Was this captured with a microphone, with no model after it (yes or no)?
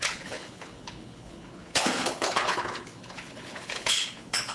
no